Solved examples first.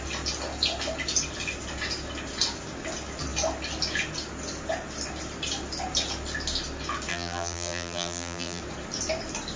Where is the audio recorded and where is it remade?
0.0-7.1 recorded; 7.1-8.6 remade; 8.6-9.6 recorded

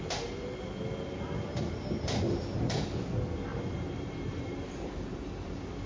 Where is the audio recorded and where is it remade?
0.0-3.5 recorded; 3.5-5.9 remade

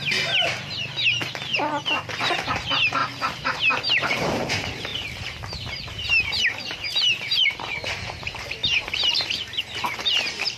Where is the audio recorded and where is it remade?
0.0-1.5 remade; 1.5-2.4 recorded; 2.4-3.0 remade; 3.0-3.6 recorded; 3.6-10.6 remade